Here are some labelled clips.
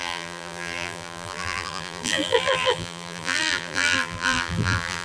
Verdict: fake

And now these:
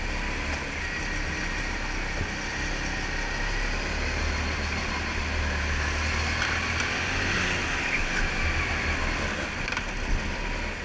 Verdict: real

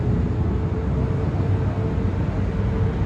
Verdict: real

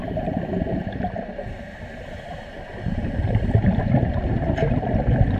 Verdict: fake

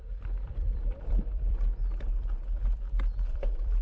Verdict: fake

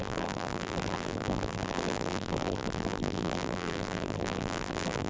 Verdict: fake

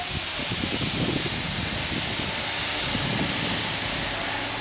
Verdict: real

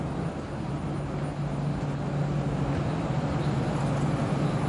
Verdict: real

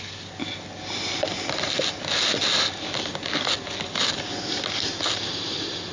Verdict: real